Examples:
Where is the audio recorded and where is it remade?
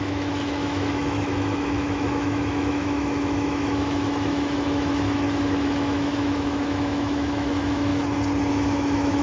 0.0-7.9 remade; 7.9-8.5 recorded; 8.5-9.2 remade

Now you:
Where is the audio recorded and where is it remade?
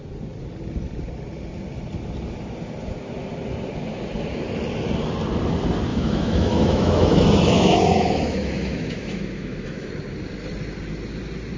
0.0-5.9 recorded; 5.9-9.9 remade; 9.9-11.6 recorded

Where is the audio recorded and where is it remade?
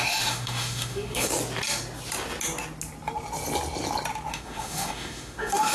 0.0-1.3 remade; 1.3-4.3 recorded; 4.3-5.7 remade